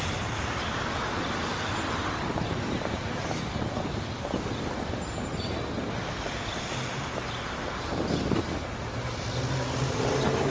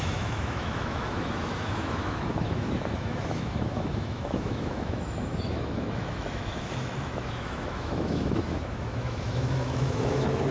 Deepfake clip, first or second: second